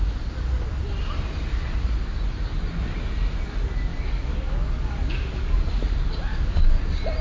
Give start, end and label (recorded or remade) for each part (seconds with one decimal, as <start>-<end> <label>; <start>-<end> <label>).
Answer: 0.0-3.9 recorded; 3.9-5.0 remade; 5.0-6.3 recorded; 6.3-6.8 remade; 6.8-7.2 recorded

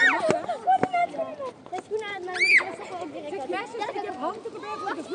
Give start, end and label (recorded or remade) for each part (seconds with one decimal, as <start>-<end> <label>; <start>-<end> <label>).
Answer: 0.0-5.1 recorded

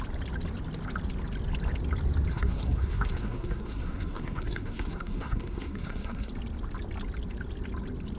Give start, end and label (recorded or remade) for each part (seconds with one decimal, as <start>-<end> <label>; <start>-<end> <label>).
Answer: 0.0-2.3 recorded; 2.3-6.3 remade; 6.3-8.2 recorded

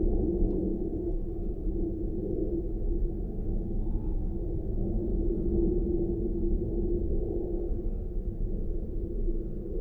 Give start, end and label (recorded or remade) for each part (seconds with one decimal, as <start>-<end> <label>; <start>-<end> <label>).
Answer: 0.0-9.8 recorded